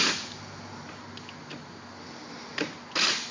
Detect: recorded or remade recorded